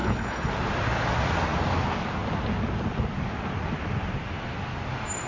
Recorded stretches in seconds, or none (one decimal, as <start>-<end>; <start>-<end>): 0.5-5.3